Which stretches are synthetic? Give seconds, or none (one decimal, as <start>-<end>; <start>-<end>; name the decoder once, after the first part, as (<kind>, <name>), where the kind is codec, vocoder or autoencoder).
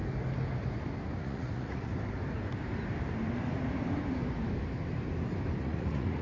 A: 1.2-1.9 (vocoder, Vocos); 5.6-6.2